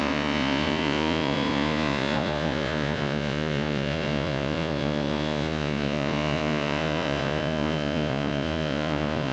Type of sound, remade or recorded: remade